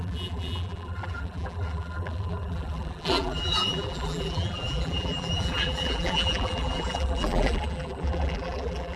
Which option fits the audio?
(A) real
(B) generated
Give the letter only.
B